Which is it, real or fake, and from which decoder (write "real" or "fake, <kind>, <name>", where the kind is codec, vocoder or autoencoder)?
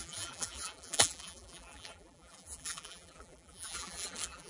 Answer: fake, vocoder, BigVGAN v2